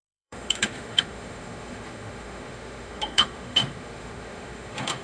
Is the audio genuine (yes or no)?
no